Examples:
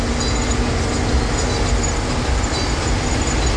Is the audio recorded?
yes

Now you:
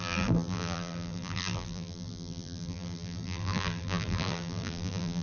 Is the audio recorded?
no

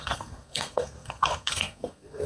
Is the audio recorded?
no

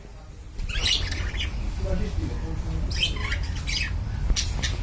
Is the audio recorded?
yes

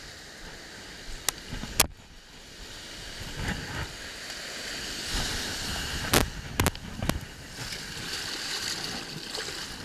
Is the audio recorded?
yes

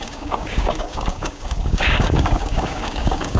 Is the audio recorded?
no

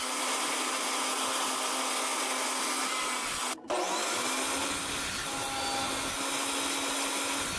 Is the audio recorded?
yes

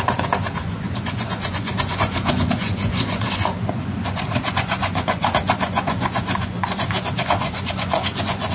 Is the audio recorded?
no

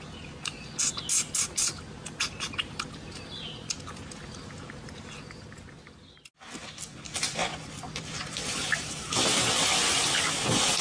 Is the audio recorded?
yes